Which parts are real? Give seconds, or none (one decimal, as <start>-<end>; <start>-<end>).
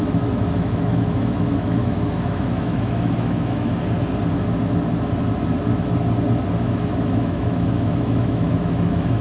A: 3.7-6.5